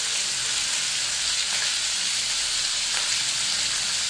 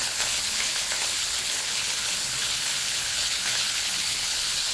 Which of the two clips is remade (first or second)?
second